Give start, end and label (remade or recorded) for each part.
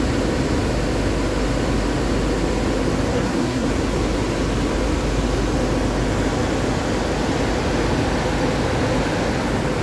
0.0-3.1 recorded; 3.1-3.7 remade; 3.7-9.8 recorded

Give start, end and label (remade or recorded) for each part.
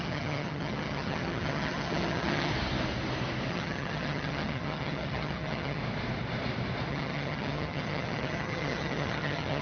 0.0-2.5 remade; 2.5-3.5 recorded; 3.5-5.8 remade; 5.8-6.9 recorded; 6.9-9.6 remade